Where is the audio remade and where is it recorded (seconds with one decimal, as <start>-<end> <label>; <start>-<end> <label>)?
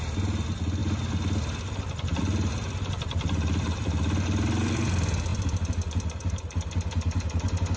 0.0-7.8 recorded